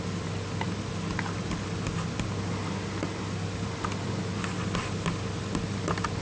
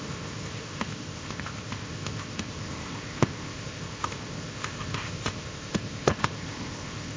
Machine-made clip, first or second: second